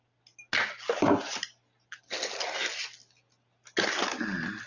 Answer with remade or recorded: recorded